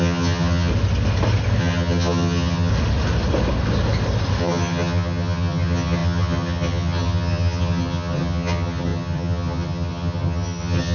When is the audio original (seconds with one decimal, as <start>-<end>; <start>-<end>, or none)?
0.7-1.6; 2.7-4.4